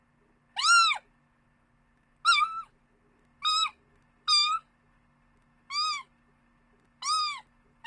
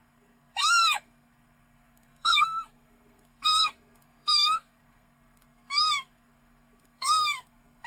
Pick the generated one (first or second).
second